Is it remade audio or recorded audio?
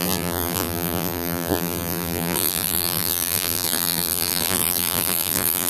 remade